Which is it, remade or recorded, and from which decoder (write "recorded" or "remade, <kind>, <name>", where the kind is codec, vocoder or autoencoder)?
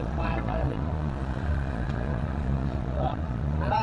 remade, vocoder, Vocos